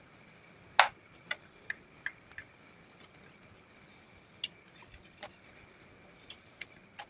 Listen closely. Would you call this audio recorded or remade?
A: recorded